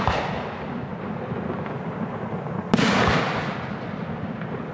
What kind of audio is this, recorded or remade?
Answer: recorded